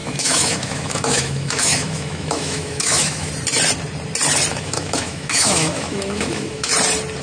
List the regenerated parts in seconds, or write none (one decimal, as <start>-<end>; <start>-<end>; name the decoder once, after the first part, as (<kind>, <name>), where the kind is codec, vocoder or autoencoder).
0.0-3.3 (autoencoder, DAC-VAE); 4.5-6.7